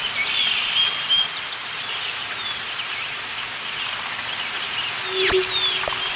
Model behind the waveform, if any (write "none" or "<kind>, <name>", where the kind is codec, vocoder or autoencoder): none